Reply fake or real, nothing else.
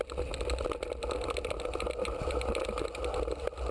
real